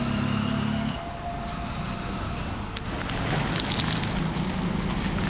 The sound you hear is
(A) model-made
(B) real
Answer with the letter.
B